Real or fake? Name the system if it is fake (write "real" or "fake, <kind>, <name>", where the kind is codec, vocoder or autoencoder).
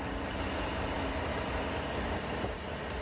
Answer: real